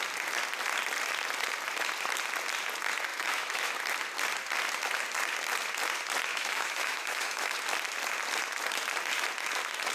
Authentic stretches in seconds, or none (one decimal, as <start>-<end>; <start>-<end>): 0.0-3.1; 3.7-6.3; 7.5-9.9